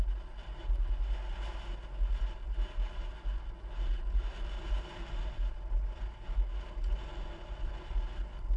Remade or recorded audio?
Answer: recorded